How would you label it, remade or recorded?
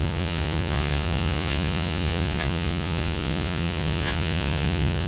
remade